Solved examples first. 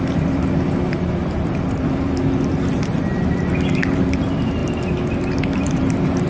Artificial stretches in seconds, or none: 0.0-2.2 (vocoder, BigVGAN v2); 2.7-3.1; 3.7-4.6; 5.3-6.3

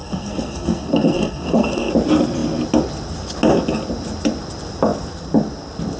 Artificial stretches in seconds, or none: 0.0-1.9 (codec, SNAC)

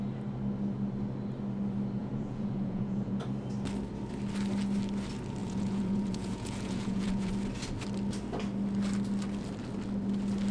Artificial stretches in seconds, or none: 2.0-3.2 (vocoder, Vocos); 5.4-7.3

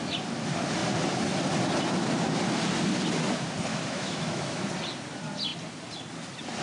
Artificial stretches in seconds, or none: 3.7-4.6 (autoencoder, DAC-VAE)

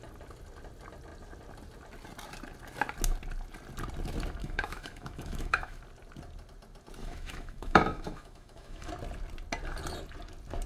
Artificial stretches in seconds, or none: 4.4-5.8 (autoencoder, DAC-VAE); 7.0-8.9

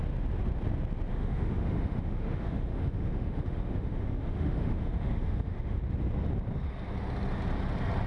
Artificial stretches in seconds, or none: 1.1-5.8 (autoencoder, DAC-VAE)